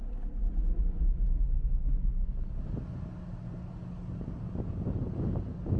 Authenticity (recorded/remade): recorded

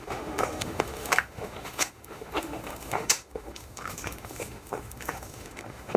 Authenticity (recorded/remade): remade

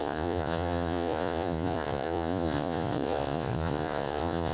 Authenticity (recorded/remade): remade